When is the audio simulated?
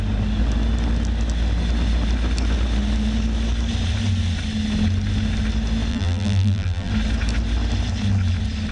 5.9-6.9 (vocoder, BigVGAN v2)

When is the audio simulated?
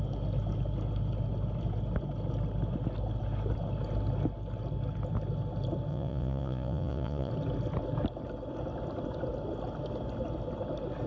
5.9-7.3 (vocoder, Vocos)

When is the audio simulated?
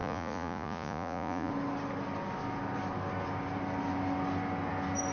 0.0-1.5 (vocoder, Vocos)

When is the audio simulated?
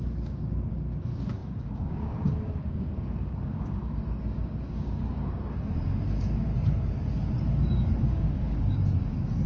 0.0-6.5 (codec, DAC); 8.0-9.5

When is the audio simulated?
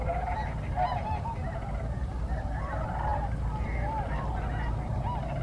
none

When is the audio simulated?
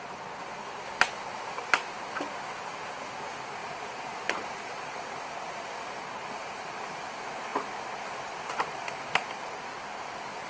3.6-5.1 (vocoder, BigVGAN v2)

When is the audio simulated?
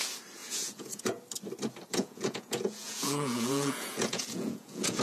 0.4-1.2 (vocoder, Vocos); 1.9-5.0